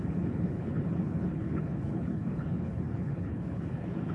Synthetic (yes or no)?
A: yes